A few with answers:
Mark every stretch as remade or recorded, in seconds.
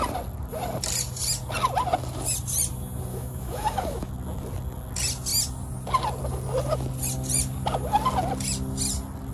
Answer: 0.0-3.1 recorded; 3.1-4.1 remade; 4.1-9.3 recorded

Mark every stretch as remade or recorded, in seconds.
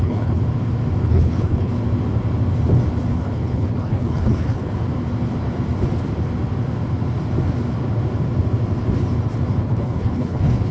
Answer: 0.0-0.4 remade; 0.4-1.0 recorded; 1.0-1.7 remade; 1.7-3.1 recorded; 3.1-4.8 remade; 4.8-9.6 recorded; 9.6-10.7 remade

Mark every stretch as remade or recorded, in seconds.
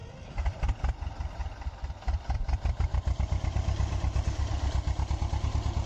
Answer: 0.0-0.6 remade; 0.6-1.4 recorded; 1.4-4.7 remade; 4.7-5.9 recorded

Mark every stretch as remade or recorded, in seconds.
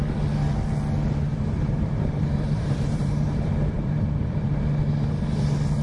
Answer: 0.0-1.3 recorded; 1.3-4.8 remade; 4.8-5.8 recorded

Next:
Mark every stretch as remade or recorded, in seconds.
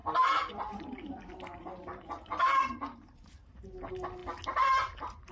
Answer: 0.0-0.8 remade; 0.8-2.6 recorded; 2.6-3.5 remade; 3.5-5.3 recorded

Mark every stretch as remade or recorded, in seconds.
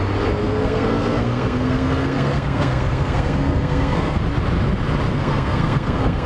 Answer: 0.0-0.4 recorded; 0.4-4.2 remade; 4.2-5.1 recorded; 5.1-6.3 remade